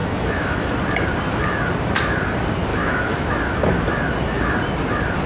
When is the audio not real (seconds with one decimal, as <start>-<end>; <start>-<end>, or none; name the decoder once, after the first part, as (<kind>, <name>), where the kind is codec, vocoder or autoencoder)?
0.0-0.7 (autoencoder, DAC-VAE); 2.7-3.3